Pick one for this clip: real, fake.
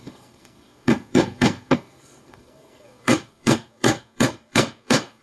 fake